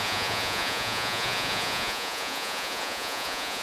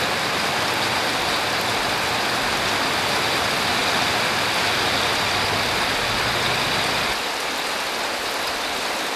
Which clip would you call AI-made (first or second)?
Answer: first